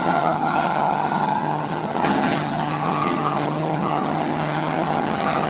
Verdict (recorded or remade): remade